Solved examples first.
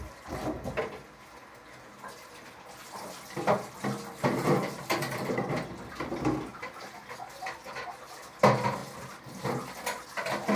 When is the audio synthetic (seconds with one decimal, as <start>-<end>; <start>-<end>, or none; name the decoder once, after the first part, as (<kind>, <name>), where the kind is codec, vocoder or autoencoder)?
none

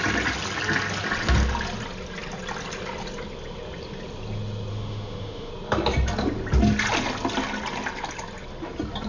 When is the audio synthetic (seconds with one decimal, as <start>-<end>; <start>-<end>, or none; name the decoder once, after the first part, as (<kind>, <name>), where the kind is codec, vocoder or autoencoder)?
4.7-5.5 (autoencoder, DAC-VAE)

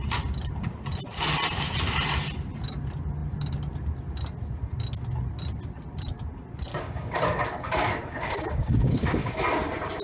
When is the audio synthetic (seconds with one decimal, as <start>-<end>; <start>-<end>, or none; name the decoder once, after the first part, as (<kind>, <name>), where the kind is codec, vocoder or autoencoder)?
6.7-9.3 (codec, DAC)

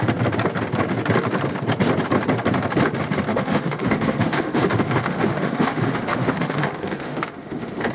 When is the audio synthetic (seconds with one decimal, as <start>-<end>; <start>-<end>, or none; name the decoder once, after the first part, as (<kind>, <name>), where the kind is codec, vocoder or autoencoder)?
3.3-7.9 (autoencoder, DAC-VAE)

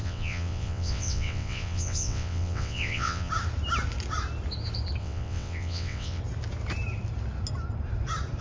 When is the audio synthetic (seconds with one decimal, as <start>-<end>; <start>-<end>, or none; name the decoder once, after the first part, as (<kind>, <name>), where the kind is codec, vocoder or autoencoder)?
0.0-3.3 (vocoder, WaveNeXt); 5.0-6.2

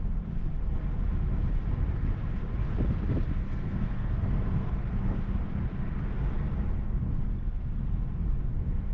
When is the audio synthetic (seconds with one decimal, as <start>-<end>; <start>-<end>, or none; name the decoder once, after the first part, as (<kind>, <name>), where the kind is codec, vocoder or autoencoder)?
3.4-4.9 (codec, SNAC); 7.3-7.9

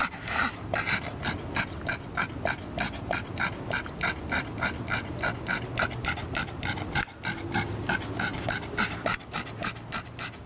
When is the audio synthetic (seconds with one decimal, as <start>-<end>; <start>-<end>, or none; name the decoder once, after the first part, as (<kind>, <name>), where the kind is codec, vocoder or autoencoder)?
none